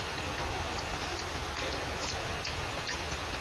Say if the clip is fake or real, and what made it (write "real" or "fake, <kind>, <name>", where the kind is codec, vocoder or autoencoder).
real